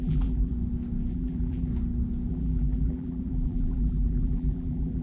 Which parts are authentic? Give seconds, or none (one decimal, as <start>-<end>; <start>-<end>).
0.5-1.1; 1.7-2.3